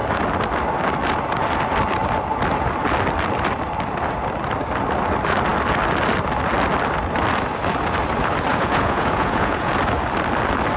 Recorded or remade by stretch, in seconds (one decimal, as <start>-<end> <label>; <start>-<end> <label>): 0.0-8.5 recorded; 8.5-9.7 remade; 9.7-10.8 recorded